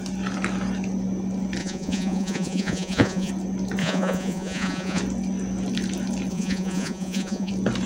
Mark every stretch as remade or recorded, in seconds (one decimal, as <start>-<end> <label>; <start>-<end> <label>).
0.0-1.6 recorded; 1.6-3.3 remade; 3.3-3.8 recorded; 3.8-5.0 remade; 5.0-6.3 recorded; 6.3-7.5 remade; 7.5-7.9 recorded